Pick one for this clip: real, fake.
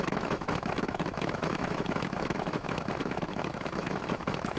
fake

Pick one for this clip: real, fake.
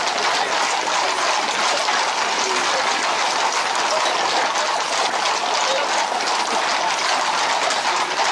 real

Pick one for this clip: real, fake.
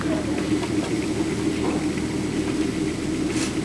real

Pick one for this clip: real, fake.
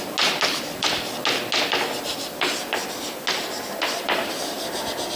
real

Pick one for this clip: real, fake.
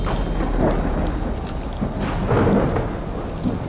real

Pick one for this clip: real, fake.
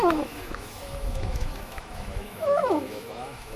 fake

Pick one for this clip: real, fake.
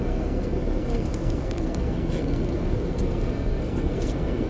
fake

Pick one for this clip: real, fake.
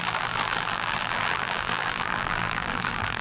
fake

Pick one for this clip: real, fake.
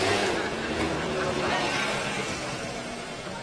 fake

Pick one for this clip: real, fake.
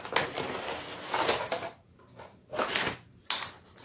real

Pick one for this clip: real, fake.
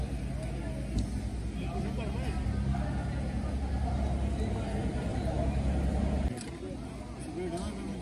real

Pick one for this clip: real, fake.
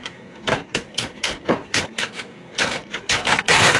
fake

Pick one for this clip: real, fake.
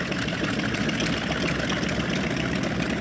real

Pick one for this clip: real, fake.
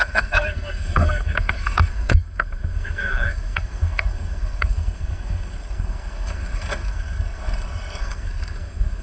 fake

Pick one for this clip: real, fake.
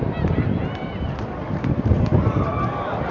real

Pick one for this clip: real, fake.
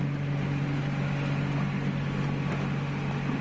real